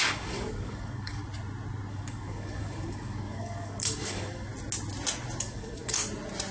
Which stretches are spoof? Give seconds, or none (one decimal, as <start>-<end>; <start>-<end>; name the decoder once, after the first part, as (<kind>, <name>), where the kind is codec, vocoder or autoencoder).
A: 0.0-1.2 (codec, DAC); 1.9-4.5; 5.4-6.0